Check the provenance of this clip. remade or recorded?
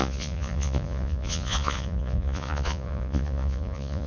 remade